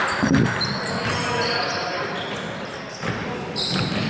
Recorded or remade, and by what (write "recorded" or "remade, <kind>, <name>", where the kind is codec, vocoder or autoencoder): recorded